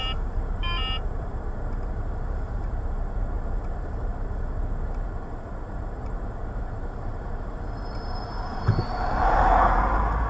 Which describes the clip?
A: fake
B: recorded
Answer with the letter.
A